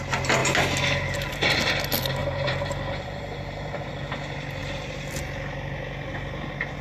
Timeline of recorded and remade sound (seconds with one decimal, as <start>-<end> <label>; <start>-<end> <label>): 0.0-2.2 recorded; 2.2-3.9 remade; 3.9-4.6 recorded; 4.6-5.1 remade; 5.1-6.8 recorded